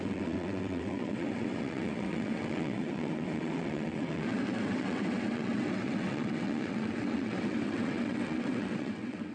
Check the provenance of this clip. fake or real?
fake